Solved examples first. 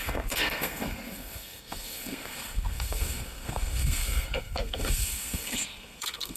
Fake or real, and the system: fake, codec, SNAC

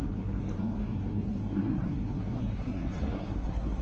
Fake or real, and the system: fake, codec, SNAC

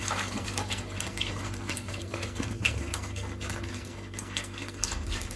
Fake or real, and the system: fake, codec, SNAC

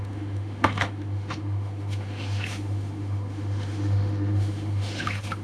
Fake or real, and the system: fake, autoencoder, DAC-VAE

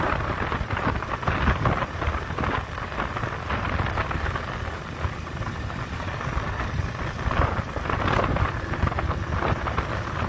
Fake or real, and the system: real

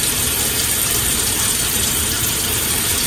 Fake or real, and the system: fake, vocoder, BigVGAN v2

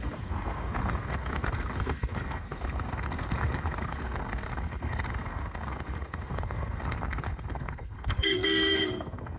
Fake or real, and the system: fake, codec, SNAC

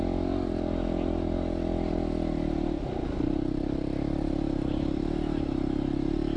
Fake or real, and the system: real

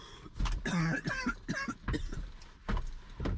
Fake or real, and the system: real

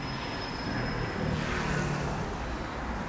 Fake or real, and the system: real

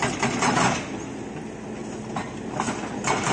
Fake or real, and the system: real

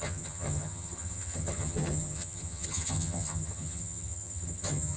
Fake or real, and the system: fake, vocoder, HiFi-GAN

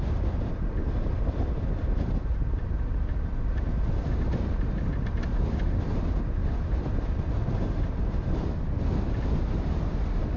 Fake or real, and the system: real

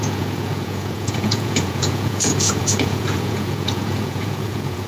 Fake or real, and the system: fake, vocoder, Vocos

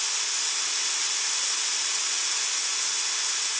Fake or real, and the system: real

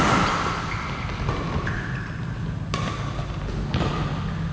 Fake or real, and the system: real